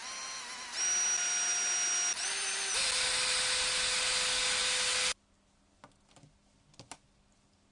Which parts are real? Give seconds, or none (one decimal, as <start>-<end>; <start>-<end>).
0.0-7.7